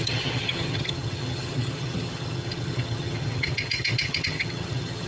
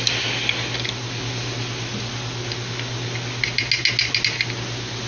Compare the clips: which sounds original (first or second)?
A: second